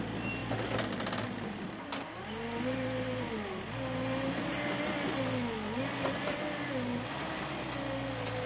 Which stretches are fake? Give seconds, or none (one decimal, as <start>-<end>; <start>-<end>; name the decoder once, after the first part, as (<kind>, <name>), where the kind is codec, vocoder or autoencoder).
none